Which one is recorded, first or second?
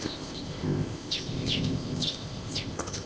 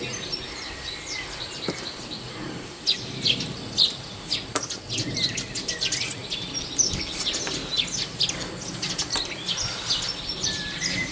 second